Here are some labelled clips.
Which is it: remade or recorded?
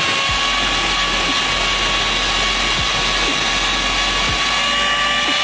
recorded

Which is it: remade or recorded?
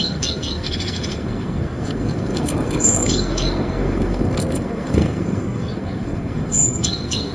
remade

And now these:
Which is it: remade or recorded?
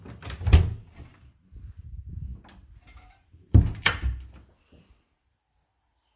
recorded